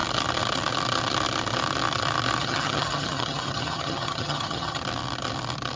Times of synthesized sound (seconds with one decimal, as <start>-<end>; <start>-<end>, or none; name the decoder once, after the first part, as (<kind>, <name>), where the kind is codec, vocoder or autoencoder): 2.4-4.8 (vocoder, HiFi-GAN)